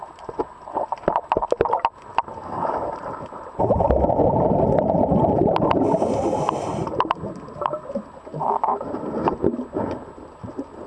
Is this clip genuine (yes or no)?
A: yes